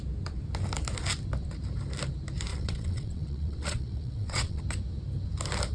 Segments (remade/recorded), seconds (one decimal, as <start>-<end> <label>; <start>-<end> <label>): 0.0-2.5 recorded; 2.5-4.6 remade; 4.6-5.7 recorded